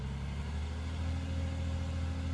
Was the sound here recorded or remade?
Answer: recorded